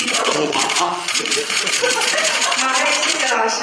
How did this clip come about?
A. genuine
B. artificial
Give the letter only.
B